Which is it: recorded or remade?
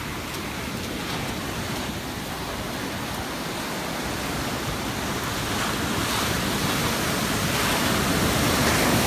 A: recorded